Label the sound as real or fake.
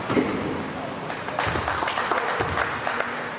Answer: real